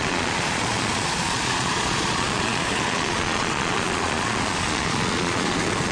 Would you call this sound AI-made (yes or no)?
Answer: yes